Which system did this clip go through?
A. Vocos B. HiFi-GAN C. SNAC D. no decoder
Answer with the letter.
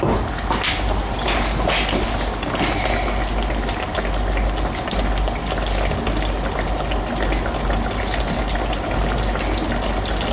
D